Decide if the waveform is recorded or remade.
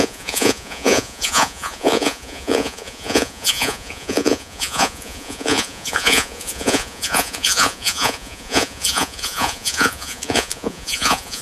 remade